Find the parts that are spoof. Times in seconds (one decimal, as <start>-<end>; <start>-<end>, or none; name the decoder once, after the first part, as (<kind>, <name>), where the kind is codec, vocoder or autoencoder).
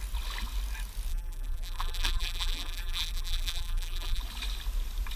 1.1-4.2 (vocoder, BigVGAN v2)